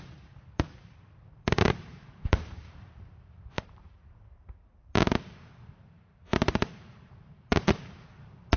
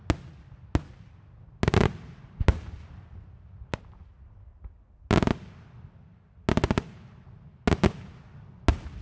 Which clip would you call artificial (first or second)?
first